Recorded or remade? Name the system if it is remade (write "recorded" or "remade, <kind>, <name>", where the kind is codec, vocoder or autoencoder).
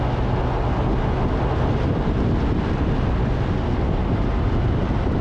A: recorded